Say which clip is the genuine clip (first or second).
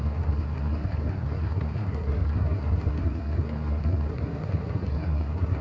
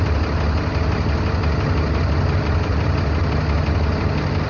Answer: second